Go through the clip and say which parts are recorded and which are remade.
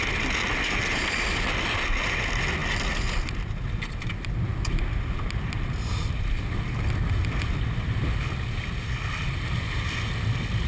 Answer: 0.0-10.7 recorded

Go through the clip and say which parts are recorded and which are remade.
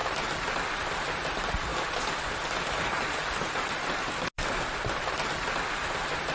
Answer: 0.0-6.3 recorded